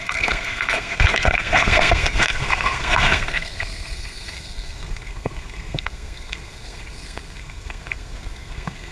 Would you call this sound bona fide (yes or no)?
no